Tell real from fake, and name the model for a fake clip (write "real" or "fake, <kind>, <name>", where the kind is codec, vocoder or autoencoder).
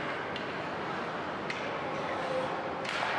real